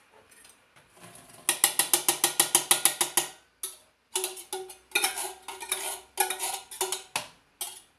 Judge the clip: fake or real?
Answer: real